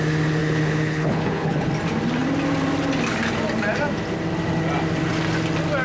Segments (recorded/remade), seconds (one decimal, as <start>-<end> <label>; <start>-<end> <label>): 0.0-0.4 recorded; 0.4-1.7 remade; 1.7-5.8 recorded